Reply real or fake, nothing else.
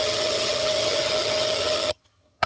fake